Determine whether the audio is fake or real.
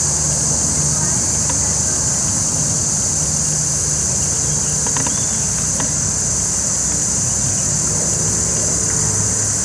real